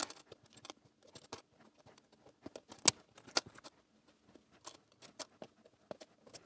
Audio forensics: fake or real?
real